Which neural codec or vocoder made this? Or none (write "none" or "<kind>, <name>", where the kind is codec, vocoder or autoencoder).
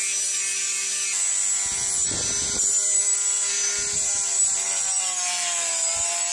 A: none